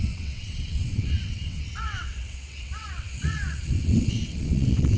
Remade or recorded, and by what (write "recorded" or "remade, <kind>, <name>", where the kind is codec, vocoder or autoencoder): remade, vocoder, WaveNeXt